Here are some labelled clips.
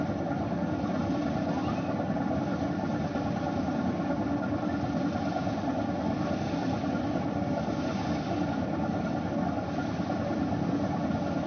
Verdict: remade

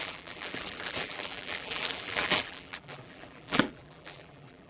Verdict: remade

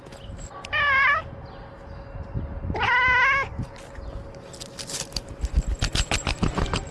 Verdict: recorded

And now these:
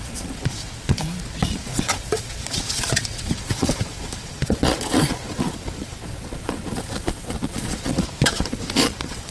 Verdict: remade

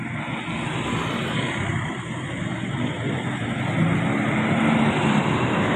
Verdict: recorded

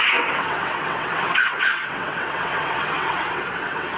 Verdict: remade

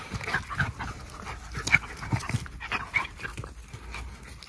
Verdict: recorded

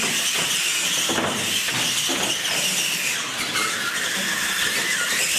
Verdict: recorded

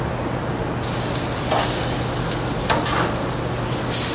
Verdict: recorded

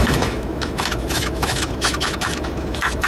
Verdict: remade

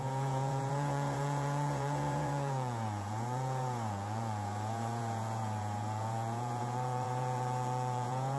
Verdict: remade